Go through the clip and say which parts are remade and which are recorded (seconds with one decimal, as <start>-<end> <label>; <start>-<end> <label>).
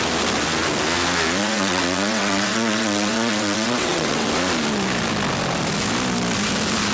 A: 0.0-1.4 recorded; 1.4-4.3 remade; 4.3-6.9 recorded